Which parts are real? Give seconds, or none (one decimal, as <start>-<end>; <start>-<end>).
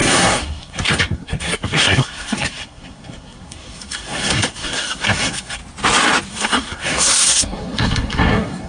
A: 5.6-6.3